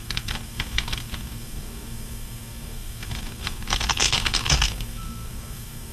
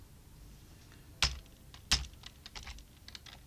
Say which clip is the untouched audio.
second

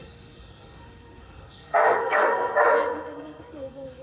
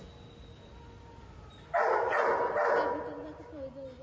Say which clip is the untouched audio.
second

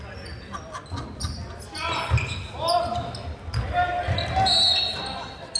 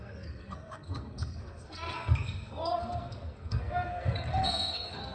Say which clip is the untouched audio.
first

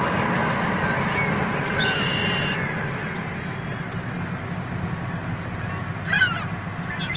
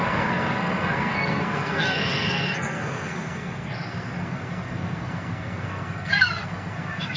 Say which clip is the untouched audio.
first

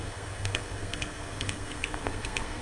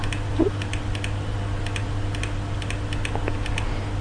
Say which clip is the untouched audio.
second